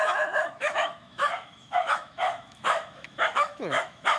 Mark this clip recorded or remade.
remade